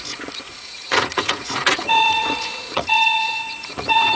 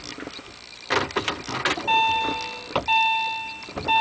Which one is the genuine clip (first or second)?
second